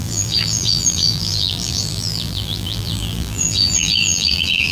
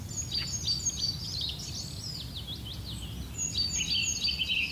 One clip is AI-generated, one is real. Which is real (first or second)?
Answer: second